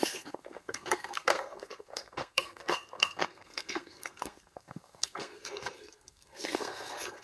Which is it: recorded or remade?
remade